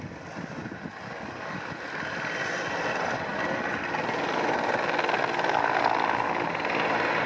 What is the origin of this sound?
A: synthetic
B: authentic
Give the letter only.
B